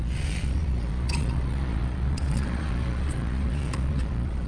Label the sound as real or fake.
fake